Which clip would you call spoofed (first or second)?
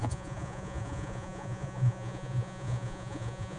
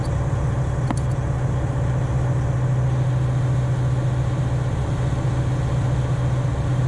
first